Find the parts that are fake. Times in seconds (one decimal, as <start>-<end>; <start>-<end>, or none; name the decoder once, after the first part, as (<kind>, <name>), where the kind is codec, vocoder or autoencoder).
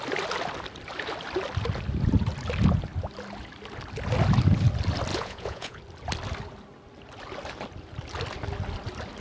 5.1-5.8 (vocoder, Vocos)